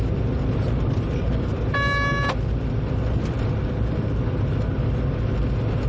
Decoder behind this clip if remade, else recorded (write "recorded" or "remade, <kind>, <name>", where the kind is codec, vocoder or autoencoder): recorded